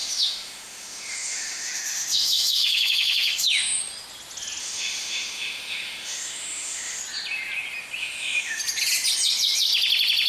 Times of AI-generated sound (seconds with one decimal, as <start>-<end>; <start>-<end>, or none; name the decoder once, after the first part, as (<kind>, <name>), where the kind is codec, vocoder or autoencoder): 0.0-3.8 (autoencoder, DAC-VAE); 4.6-7.0; 8.0-8.6